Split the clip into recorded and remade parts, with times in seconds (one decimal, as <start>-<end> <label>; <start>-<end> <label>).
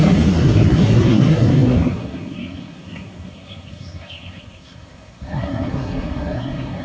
0.0-6.8 remade